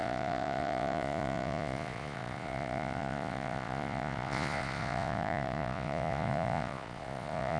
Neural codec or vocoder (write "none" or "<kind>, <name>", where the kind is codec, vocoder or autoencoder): vocoder, Vocos